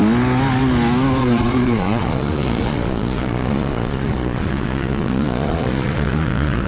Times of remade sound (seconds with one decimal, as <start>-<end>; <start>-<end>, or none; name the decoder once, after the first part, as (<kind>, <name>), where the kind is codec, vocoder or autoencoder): 1.2-6.7 (vocoder, Vocos)